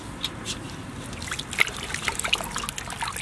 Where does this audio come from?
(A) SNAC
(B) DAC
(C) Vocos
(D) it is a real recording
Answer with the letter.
D